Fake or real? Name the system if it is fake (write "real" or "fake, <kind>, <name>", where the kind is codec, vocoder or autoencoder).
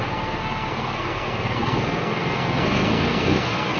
fake, codec, SNAC